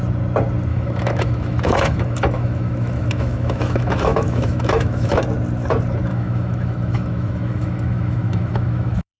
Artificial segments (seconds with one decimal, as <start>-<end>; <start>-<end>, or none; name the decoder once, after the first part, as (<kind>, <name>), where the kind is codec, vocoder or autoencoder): 0.7-5.2 (autoencoder, DAC-VAE); 6.1-9.2

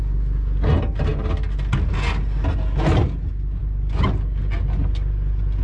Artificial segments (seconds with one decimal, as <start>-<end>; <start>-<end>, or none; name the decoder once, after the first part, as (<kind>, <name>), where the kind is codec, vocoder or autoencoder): none

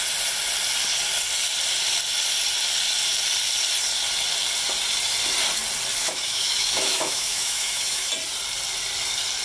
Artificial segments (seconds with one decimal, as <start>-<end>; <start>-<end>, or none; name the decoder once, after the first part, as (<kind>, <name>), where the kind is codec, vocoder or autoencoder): 6.0-8.1 (autoencoder, DAC-VAE)

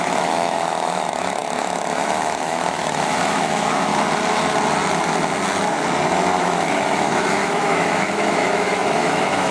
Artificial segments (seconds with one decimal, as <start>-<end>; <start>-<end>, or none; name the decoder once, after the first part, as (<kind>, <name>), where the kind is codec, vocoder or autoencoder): 0.0-3.9 (autoencoder, DAC-VAE); 6.4-9.5

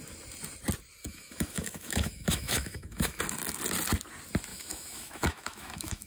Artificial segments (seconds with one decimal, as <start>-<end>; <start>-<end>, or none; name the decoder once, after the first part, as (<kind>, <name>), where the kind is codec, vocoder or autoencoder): 1.0-3.2 (autoencoder, DAC-VAE); 4.5-6.1